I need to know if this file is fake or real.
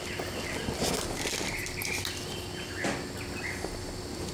real